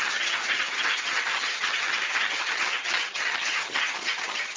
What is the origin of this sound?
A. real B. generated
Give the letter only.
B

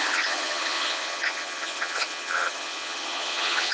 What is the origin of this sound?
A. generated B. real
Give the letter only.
A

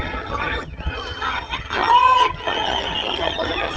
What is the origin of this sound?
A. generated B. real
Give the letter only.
A